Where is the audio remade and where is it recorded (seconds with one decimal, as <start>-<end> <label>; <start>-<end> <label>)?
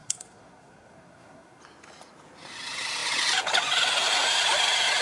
0.0-1.6 remade; 1.6-5.0 recorded